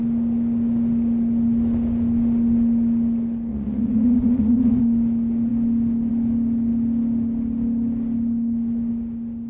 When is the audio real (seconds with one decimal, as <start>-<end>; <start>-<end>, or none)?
0.0-3.5; 4.8-9.5

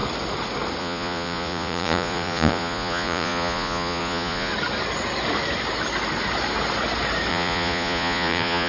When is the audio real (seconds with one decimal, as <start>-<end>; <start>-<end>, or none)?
0.0-0.8; 4.5-7.3

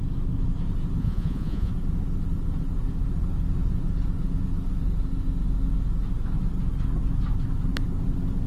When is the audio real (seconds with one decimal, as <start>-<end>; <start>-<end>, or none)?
0.0-1.0; 1.7-8.5

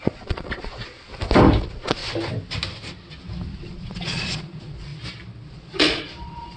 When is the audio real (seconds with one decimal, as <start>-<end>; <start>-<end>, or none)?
1.1-1.6; 2.0-3.6; 4.9-5.5

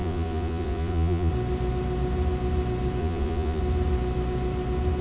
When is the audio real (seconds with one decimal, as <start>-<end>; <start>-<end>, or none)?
1.3-3.0; 3.6-5.0